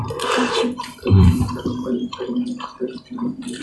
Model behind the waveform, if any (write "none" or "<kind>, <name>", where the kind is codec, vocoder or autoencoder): vocoder, BigVGAN v2